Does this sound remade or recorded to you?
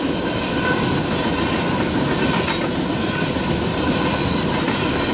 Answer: recorded